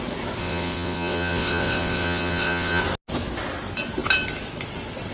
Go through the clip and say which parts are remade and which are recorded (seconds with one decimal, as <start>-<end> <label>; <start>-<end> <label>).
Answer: 0.0-0.4 recorded; 0.4-2.8 remade; 2.8-5.1 recorded